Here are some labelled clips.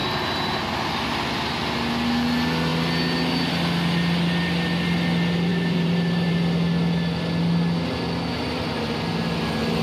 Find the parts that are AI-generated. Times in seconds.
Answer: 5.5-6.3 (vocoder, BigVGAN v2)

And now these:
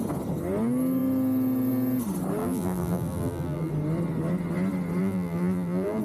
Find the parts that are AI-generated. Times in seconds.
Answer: 2.4-3.7 (vocoder, BigVGAN v2); 5.0-6.0

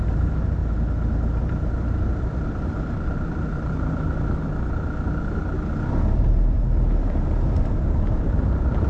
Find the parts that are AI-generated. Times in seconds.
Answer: 0.0-0.6 (vocoder, BigVGAN v2); 1.4-4.4; 6.0-8.9

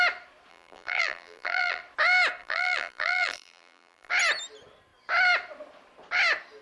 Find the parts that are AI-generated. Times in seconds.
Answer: 0.5-1.8 (vocoder, BigVGAN v2); 2.4-4.1